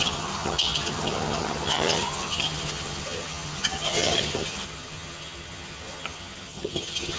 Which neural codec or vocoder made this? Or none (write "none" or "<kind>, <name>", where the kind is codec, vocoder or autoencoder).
vocoder, HiFi-GAN